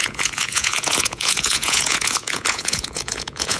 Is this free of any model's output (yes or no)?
no